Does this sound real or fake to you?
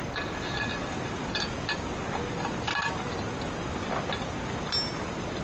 real